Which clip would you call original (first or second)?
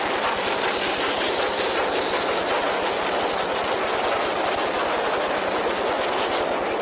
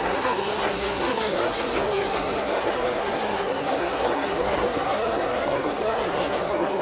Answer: first